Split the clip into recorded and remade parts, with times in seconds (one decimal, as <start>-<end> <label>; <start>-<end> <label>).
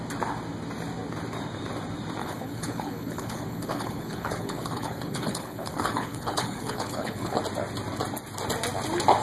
0.0-2.2 recorded; 2.2-7.4 remade; 7.4-9.2 recorded